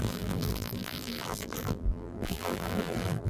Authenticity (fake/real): fake